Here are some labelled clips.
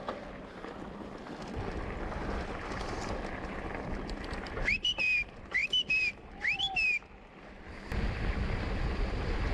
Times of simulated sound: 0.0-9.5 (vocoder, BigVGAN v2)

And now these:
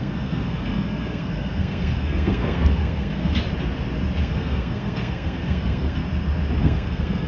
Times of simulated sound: 0.0-3.3 (codec, SNAC); 4.2-6.0; 6.6-7.3

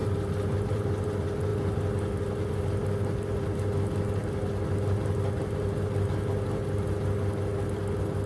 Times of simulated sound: 0.0-1.0 (vocoder, BigVGAN v2); 4.2-5.4

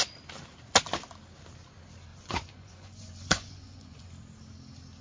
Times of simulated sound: 2.1-4.1 (vocoder, Vocos)

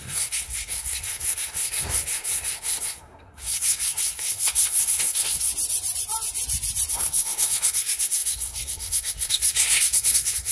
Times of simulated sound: 0.0-5.5 (codec, SNAC); 6.9-10.5

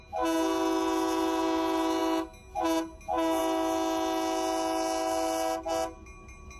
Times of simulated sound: none

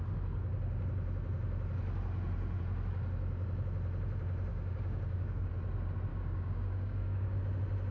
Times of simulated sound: 4.5-5.5 (codec, DAC); 6.1-7.4